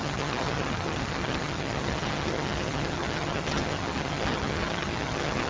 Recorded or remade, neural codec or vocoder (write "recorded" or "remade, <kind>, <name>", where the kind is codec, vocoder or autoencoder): remade, vocoder, HiFi-GAN